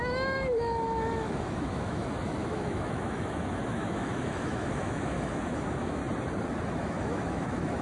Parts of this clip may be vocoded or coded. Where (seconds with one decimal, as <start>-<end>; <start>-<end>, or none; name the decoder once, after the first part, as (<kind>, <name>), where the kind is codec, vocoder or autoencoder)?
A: 0.0-6.0 (autoencoder, DAC-VAE); 6.7-7.8